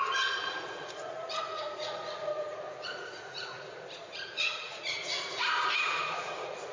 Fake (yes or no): yes